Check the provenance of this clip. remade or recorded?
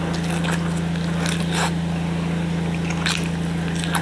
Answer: recorded